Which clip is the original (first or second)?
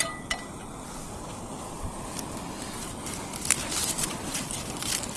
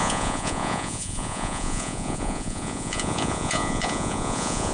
first